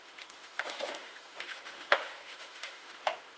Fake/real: fake